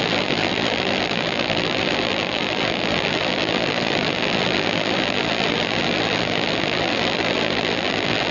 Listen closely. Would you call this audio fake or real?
fake